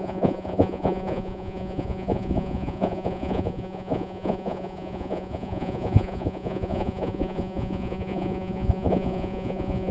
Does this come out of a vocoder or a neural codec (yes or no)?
yes